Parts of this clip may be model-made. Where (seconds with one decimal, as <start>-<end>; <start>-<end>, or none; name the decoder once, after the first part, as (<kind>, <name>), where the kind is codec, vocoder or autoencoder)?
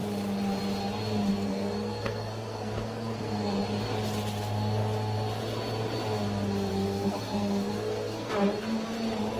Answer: 1.3-3.6 (codec, SNAC); 6.7-8.3